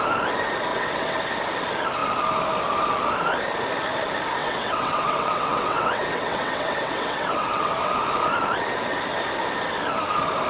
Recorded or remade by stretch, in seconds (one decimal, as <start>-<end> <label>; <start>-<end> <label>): 0.0-0.7 recorded; 0.7-1.2 remade; 1.2-4.4 recorded; 4.4-7.9 remade; 7.9-10.5 recorded